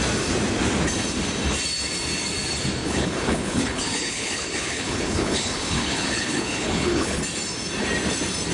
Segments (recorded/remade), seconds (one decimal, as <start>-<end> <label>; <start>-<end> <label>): 0.0-2.8 recorded; 2.8-7.2 remade; 7.2-8.5 recorded